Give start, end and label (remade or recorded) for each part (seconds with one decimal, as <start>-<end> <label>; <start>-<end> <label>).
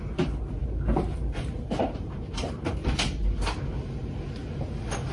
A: 0.0-2.8 remade; 2.8-3.8 recorded; 3.8-4.4 remade; 4.4-5.1 recorded